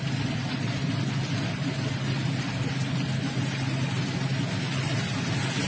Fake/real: real